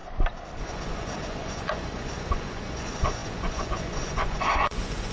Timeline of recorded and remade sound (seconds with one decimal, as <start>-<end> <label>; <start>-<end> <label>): 0.0-0.6 recorded; 0.6-5.1 remade